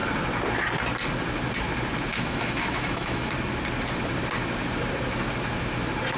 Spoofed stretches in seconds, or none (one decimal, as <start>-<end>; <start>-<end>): 2.1-3.3